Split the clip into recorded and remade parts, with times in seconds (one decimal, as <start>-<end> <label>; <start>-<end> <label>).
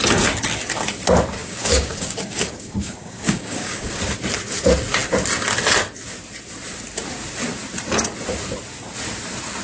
0.0-1.4 recorded; 1.4-4.0 remade; 4.0-9.6 recorded